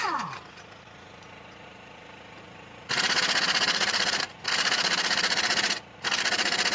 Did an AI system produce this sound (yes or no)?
yes